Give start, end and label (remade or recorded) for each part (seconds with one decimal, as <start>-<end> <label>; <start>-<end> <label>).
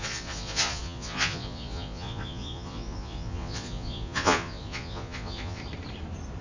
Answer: 0.0-5.6 remade; 5.6-6.4 recorded